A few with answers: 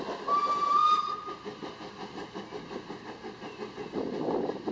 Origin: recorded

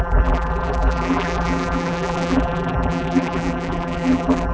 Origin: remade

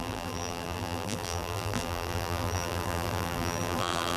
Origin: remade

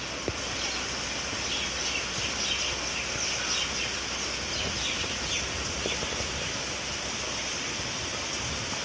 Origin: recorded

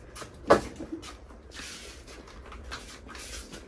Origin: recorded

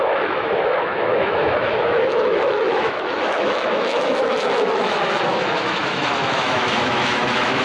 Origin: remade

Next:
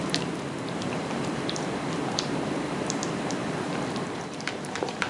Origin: remade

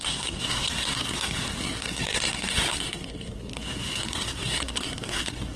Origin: remade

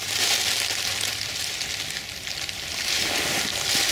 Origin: recorded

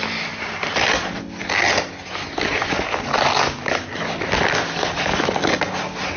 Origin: recorded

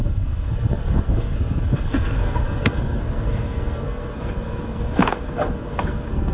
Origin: remade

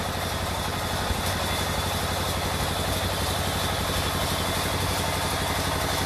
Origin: recorded